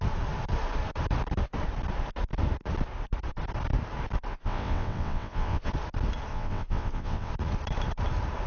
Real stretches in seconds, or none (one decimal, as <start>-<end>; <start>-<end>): 0.0-4.3; 5.7-6.3; 7.3-8.5